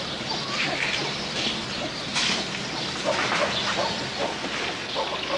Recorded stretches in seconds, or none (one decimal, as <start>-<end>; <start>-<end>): 2.1-5.4